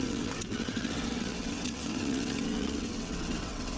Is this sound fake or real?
fake